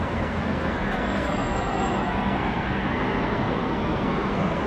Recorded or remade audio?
remade